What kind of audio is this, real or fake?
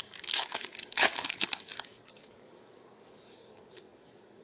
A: fake